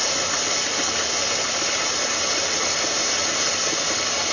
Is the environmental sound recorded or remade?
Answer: recorded